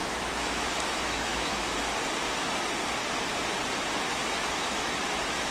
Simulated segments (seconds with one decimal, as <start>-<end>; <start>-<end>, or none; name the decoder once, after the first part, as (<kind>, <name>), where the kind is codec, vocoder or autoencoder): 0.0-1.8 (autoencoder, DAC-VAE); 4.1-5.5